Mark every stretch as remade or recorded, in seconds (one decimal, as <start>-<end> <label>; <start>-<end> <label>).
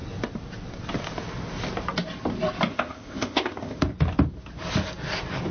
0.0-2.7 recorded; 2.7-3.8 remade; 3.8-5.5 recorded